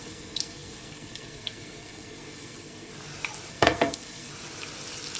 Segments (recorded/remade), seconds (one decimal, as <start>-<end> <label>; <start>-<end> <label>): 0.0-2.9 remade; 2.9-3.5 recorded; 3.5-4.3 remade; 4.3-5.2 recorded